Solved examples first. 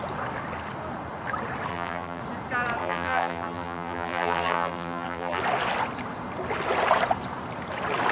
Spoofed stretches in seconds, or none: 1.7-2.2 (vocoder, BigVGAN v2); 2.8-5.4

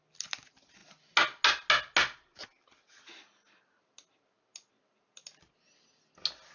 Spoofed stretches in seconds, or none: none